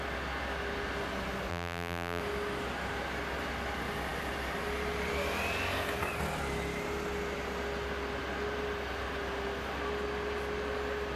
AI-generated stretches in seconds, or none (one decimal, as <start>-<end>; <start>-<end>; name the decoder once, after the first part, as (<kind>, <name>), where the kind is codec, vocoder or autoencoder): 1.5-2.2 (vocoder, BigVGAN v2)